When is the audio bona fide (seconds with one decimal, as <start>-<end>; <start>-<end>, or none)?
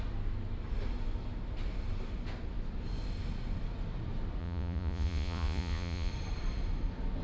0.0-4.4; 6.1-7.2